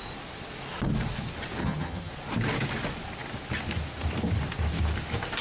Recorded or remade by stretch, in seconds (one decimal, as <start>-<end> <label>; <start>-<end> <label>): 0.0-1.6 recorded; 1.6-2.1 remade; 2.1-5.4 recorded

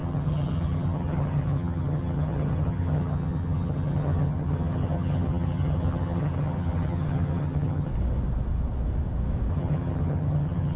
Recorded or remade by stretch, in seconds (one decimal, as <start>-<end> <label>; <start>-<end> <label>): 0.0-7.9 remade; 7.9-9.5 recorded; 9.5-10.8 remade

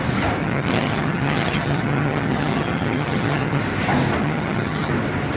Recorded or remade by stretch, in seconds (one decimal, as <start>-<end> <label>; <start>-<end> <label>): 0.0-0.4 recorded; 0.4-3.6 remade; 3.6-4.2 recorded; 4.2-4.9 remade; 4.9-5.4 recorded

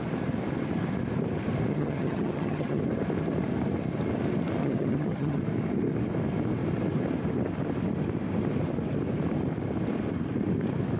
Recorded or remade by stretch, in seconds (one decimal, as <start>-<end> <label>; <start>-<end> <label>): 0.0-1.7 recorded; 1.7-2.8 remade; 2.8-4.6 recorded; 4.6-5.4 remade; 5.4-11.0 recorded

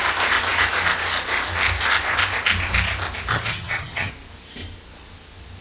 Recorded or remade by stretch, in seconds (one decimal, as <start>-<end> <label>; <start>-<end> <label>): 0.0-3.3 recorded; 3.3-4.1 remade; 4.1-5.6 recorded

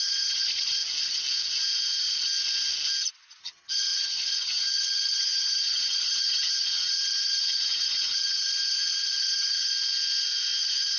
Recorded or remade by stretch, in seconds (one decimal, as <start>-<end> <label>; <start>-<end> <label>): 0.0-0.8 remade; 0.8-3.4 recorded; 3.4-9.7 remade; 9.7-10.6 recorded; 10.6-11.0 remade

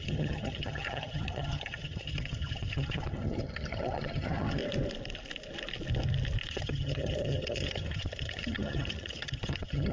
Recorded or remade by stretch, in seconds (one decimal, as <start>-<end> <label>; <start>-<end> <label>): 0.0-4.6 remade; 4.6-6.5 recorded; 6.5-9.9 remade